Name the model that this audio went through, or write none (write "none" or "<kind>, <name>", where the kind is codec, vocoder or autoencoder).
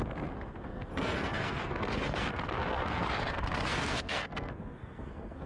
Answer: codec, SNAC